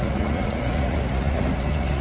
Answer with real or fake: fake